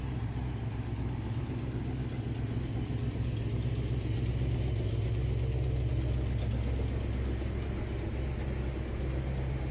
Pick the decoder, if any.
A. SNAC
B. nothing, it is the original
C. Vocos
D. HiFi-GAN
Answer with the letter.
B